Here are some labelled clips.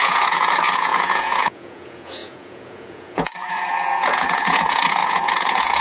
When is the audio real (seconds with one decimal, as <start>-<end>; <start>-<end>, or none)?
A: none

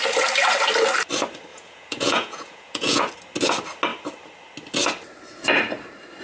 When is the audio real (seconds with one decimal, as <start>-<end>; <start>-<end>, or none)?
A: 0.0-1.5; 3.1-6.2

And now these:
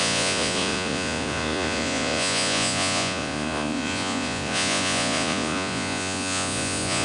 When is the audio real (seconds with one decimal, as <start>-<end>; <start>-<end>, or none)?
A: none

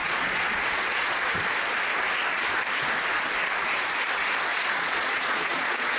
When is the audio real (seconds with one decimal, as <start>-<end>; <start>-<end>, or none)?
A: 1.3-4.5

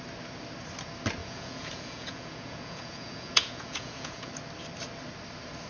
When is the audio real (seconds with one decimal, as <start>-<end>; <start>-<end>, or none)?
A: 0.0-1.2; 4.3-5.7

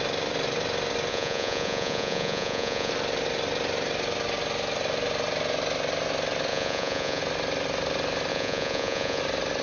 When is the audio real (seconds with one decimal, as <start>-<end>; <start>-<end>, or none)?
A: 0.0-1.1; 2.9-6.5; 7.2-8.3; 9.2-9.6

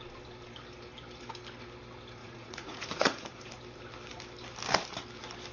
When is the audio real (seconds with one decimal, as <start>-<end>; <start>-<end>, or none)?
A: 0.0-2.2; 3.5-5.5

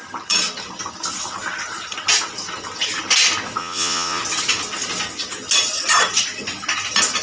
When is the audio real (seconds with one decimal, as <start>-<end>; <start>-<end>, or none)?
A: 0.0-3.6; 4.2-7.2